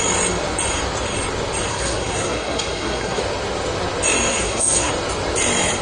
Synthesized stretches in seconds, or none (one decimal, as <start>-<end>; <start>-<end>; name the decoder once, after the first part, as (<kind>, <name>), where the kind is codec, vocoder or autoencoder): 1.7-3.2 (codec, SNAC); 4.3-4.9